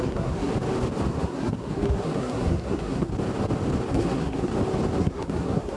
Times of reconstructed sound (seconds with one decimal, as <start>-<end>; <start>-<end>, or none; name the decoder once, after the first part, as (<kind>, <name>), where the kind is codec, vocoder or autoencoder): 0.0-0.5 (codec, SNAC); 1.1-3.1; 3.9-4.5; 5.0-5.8